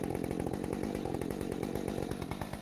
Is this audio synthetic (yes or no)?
no